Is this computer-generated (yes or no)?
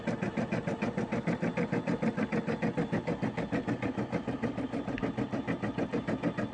no